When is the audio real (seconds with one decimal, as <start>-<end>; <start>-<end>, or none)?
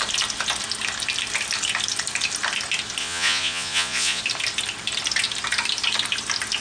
0.0-3.0; 4.2-6.6